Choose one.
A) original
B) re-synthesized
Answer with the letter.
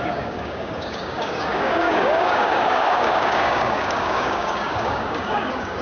B